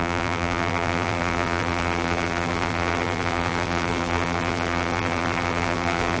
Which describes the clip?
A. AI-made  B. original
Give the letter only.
A